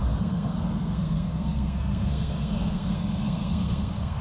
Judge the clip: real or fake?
fake